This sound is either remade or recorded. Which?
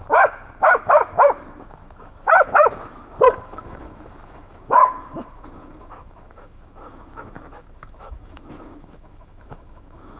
remade